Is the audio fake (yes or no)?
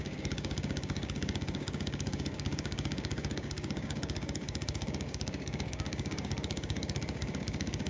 yes